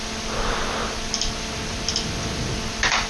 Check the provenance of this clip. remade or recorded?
recorded